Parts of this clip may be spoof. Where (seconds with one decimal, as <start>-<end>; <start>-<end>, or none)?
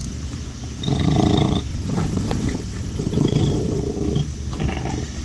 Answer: 1.7-3.8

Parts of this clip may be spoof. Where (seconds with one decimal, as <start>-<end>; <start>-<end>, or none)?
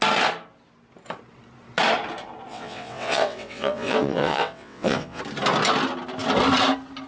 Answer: 2.5-5.2